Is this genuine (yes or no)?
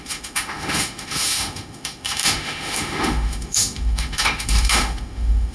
no